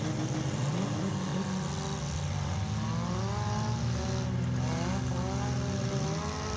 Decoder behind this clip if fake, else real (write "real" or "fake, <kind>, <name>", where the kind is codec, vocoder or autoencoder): real